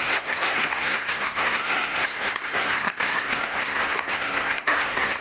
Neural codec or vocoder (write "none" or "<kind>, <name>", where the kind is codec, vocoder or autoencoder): codec, SNAC